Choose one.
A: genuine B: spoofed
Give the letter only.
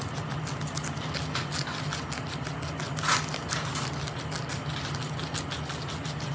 A